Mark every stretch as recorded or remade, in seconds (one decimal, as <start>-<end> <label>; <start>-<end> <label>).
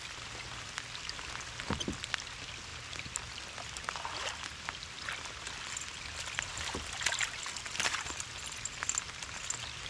0.0-9.9 recorded